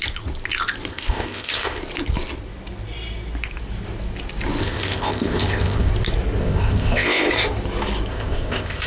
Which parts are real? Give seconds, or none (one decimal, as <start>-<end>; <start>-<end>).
0.0-0.9; 1.8-4.6; 5.9-6.4; 7.3-8.1